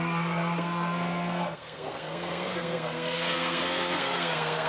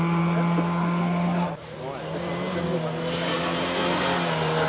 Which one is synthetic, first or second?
first